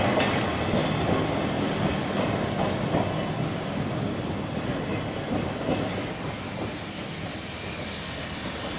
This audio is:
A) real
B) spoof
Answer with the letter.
A